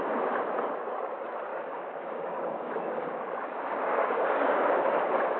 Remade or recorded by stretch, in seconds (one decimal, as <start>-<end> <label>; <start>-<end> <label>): 0.0-1.5 recorded; 1.5-4.7 remade; 4.7-5.4 recorded